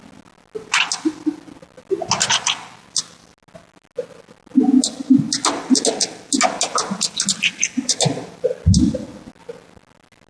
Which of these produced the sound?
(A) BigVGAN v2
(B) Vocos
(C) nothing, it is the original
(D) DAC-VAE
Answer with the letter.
C